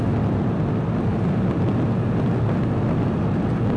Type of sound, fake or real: real